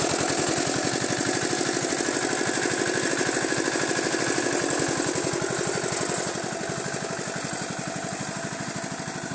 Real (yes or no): yes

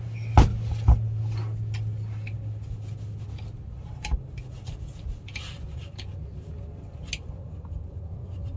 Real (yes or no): yes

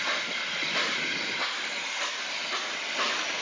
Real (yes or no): yes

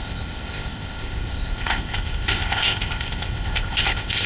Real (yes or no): no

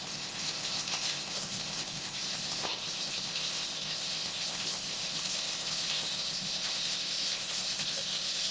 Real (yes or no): no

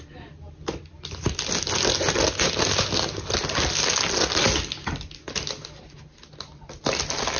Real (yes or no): yes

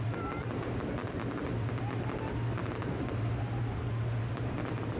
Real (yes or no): yes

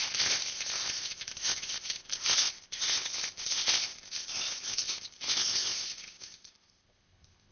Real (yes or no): no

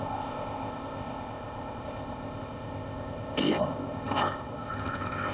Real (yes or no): no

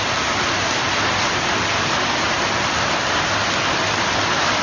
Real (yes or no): yes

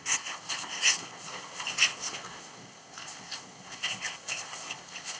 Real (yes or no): no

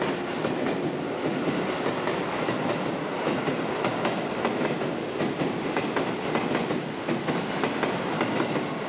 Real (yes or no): yes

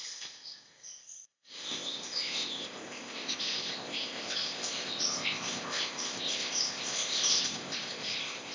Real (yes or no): no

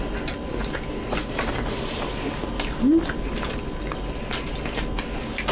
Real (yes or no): yes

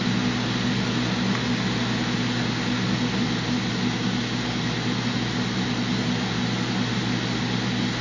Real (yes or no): yes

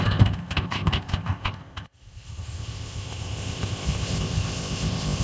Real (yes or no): no